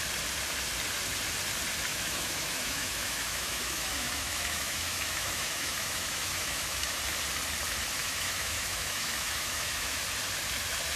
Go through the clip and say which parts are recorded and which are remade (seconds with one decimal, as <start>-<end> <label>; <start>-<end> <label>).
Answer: 0.0-1.9 recorded; 1.9-7.0 remade; 7.0-8.0 recorded; 8.0-10.0 remade; 10.0-11.0 recorded